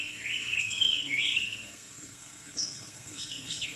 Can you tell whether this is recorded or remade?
remade